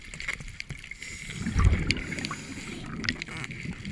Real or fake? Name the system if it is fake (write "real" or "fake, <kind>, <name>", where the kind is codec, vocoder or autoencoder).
real